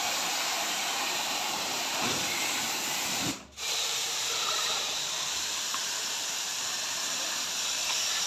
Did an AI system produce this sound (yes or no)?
yes